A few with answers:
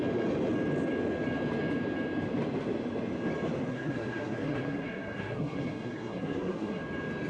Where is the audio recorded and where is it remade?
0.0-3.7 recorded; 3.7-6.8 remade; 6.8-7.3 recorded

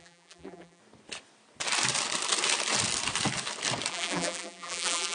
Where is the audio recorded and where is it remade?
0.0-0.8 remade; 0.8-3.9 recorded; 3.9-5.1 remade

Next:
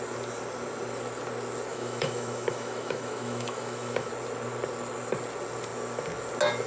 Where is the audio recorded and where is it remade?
0.0-1.7 recorded; 1.7-4.1 remade; 4.1-6.7 recorded

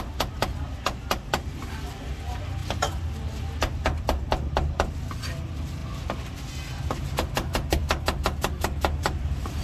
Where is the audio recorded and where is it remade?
0.0-9.6 recorded

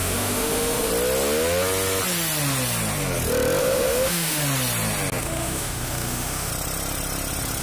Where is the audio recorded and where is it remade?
0.0-0.9 remade; 0.9-3.6 recorded; 3.6-4.4 remade; 4.4-5.2 recorded; 5.2-6.5 remade; 6.5-7.6 recorded

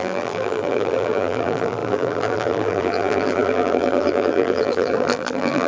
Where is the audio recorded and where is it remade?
0.0-5.7 remade

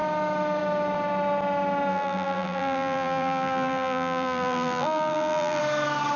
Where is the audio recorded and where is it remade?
0.0-1.9 recorded; 1.9-5.6 remade; 5.6-6.2 recorded

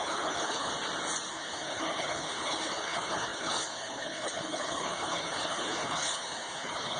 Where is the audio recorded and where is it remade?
0.0-0.7 remade; 0.7-1.3 recorded; 1.3-7.0 remade